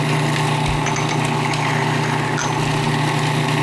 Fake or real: real